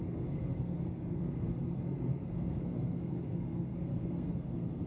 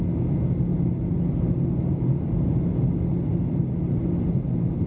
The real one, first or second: second